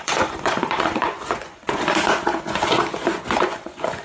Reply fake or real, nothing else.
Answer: fake